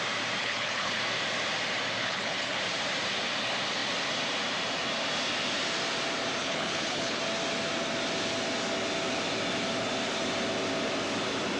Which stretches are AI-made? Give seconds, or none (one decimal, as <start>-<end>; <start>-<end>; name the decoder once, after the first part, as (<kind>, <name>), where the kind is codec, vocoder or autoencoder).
0.4-1.0 (codec, HILCodec); 2.0-2.6; 6.4-7.2